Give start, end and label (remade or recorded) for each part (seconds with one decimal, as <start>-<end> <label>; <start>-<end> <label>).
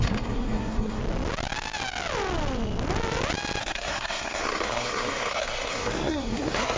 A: 0.0-1.0 remade; 1.0-3.6 recorded; 3.6-6.8 remade